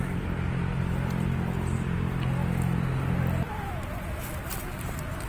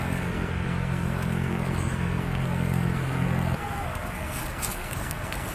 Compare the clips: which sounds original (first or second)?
first